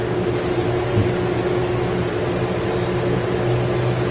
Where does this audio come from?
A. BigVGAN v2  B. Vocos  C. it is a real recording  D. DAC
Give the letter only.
C